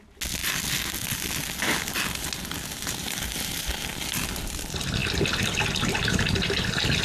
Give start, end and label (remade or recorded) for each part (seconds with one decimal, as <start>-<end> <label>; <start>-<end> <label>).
0.0-3.0 recorded; 3.0-3.7 remade; 3.7-7.0 recorded